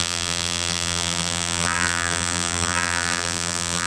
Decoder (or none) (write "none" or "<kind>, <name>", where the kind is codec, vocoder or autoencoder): vocoder, BigVGAN v2